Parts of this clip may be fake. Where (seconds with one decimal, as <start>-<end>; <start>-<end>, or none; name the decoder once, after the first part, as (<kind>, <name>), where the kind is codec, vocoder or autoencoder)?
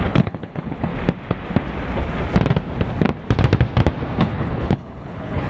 0.0-0.9 (codec, HILCodec); 4.2-5.5